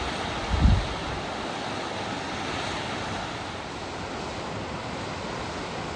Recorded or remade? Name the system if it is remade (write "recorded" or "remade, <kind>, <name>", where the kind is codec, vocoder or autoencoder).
recorded